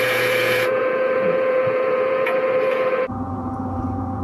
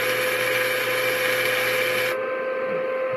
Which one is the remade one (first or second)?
first